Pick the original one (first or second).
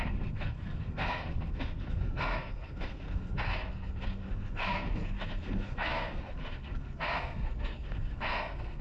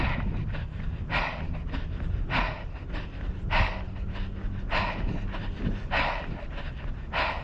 second